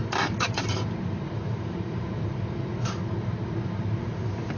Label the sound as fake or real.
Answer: fake